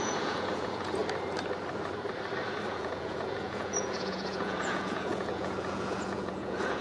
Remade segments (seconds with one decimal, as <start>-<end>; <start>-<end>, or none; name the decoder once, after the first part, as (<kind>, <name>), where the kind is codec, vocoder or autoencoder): 0.0-1.0 (vocoder, Vocos); 2.7-6.8